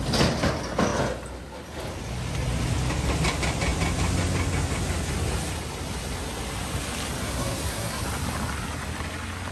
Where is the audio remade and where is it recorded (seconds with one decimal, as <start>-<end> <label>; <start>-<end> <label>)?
0.0-7.2 recorded; 7.2-8.0 remade; 8.0-9.5 recorded